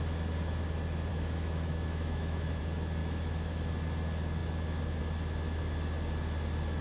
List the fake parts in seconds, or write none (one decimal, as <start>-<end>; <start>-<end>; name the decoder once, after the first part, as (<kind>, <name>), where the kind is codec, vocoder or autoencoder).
1.1-2.6 (autoencoder, DAC-VAE); 3.0-3.7